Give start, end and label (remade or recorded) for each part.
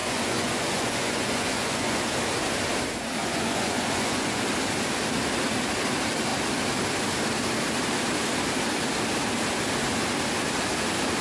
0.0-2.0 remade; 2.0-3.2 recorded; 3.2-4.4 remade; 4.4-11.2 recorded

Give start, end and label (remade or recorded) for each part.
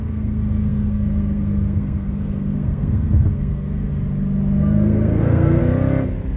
0.0-3.9 remade; 3.9-4.6 recorded; 4.6-5.6 remade; 5.6-6.4 recorded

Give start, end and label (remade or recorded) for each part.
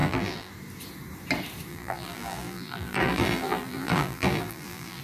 0.0-0.5 remade; 0.5-1.7 recorded; 1.7-5.0 remade